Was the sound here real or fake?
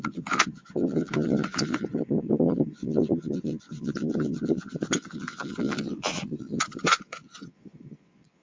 fake